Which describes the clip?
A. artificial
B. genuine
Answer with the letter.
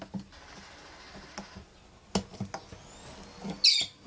B